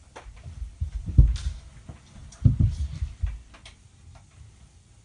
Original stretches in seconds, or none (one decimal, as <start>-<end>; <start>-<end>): 0.0-5.0

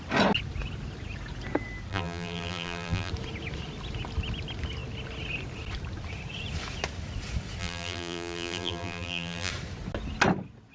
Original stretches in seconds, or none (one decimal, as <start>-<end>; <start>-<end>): 0.0-1.9; 3.1-7.6; 9.5-10.7

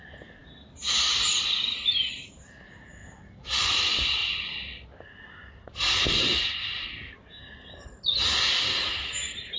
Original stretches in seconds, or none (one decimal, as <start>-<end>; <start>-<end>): 0.0-3.0; 3.8-9.6

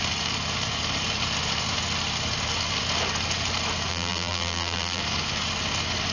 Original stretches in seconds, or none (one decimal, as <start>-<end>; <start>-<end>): 0.0-3.9; 5.0-6.1

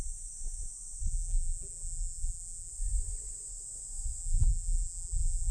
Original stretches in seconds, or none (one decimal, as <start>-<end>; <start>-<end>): 0.0-1.1; 2.7-4.2

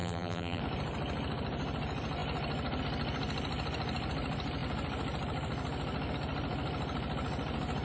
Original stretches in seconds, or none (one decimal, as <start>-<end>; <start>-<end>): 0.6-7.8